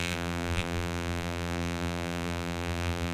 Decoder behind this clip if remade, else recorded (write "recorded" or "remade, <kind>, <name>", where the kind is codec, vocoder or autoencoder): remade, vocoder, BigVGAN v2